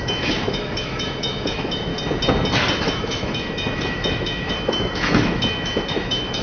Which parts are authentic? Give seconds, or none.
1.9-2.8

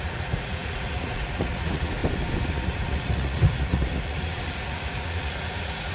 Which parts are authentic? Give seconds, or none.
2.0-2.5

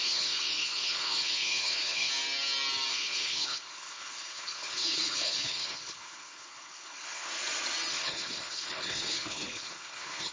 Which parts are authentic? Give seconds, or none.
2.1-2.9; 7.3-7.9

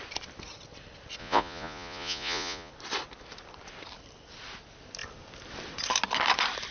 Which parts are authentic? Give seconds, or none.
0.0-1.2; 2.7-6.7

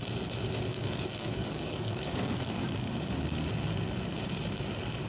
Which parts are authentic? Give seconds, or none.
0.0-0.7; 3.5-5.1

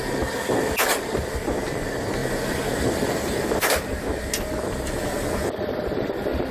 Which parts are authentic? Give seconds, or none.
0.0-6.5

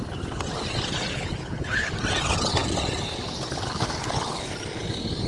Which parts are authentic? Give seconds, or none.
0.0-1.1; 1.9-5.3

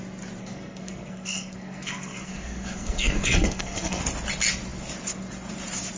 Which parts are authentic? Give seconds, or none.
0.0-0.4; 4.0-6.0